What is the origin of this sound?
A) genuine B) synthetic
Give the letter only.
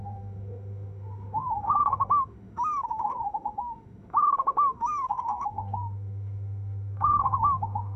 B